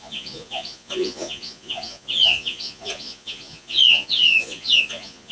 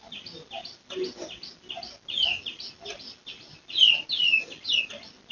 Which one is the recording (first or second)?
second